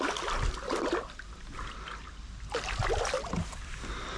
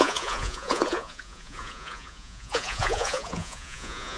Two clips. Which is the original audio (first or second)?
first